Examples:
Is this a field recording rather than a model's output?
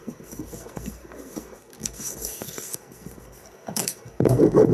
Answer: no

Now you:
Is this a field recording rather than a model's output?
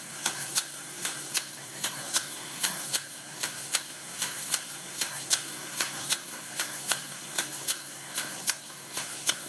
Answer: no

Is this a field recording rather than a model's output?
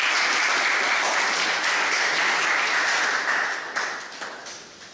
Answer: yes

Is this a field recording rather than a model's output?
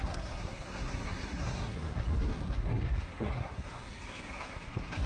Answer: no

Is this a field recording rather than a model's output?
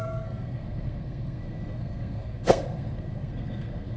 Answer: no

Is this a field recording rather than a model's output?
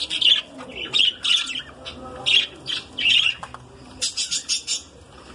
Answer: yes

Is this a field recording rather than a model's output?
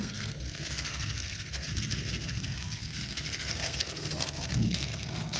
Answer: no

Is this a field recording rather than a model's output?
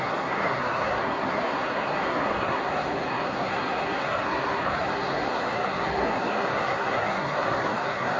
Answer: no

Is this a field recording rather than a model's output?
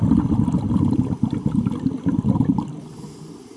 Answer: yes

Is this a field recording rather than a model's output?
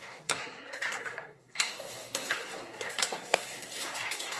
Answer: no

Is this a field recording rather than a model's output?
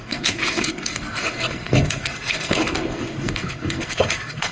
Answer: no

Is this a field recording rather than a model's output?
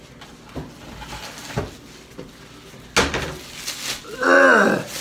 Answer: yes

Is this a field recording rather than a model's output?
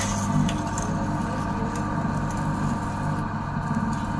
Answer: yes